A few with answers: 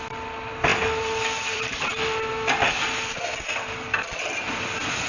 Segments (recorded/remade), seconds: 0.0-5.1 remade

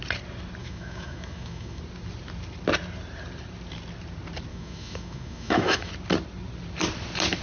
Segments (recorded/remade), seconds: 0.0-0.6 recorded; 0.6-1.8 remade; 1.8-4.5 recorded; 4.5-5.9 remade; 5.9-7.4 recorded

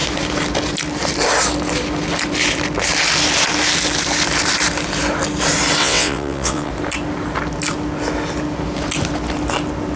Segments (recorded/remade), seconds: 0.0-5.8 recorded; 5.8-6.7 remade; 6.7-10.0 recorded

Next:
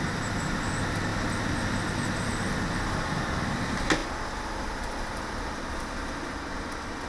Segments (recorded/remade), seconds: 0.0-7.1 recorded